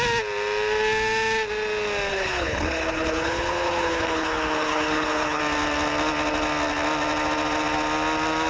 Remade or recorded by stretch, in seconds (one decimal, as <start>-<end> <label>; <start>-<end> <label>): 0.0-2.1 recorded; 2.1-5.4 remade; 5.4-8.5 recorded